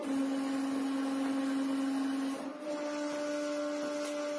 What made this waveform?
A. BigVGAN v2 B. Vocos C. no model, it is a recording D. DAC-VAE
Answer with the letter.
C